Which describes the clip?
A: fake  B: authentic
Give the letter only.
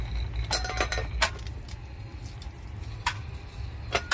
B